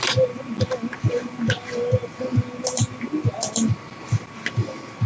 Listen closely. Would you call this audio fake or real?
real